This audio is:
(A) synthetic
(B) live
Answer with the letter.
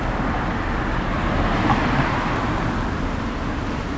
B